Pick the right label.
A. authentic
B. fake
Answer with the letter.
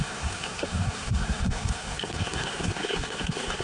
B